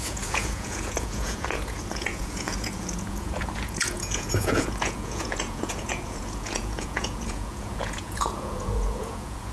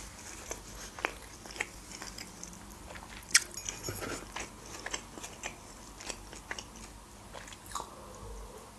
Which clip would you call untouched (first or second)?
second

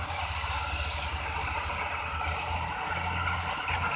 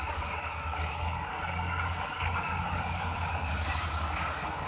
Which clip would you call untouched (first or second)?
first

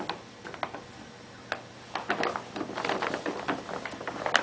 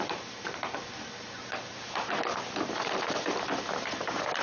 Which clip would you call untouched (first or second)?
first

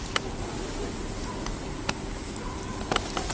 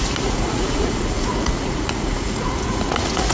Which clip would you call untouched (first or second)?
first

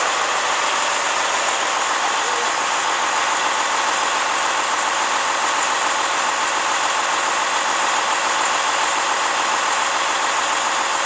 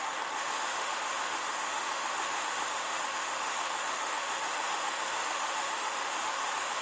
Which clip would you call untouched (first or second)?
first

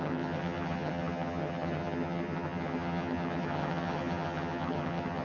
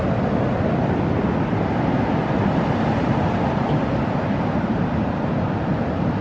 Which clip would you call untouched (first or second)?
second